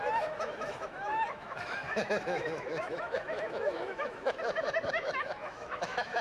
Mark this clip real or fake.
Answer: fake